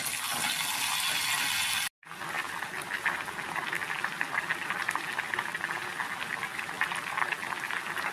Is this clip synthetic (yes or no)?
no